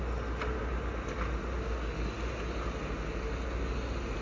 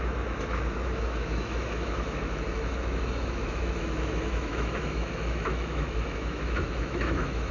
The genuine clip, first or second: first